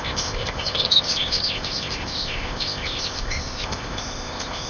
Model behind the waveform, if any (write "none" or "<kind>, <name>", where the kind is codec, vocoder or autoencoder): codec, ZipCodec